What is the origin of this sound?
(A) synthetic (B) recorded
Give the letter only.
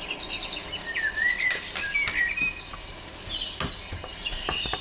B